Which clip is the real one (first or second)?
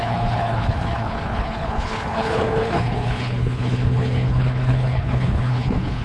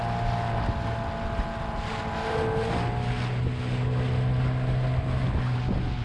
second